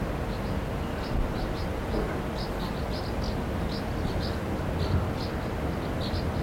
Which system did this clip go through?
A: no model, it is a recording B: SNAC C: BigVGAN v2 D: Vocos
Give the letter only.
A